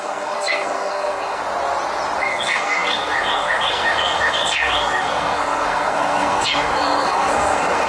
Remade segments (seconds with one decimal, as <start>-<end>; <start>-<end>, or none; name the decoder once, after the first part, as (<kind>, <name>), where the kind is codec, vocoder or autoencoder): 0.0-1.4 (codec, SNAC); 2.2-7.9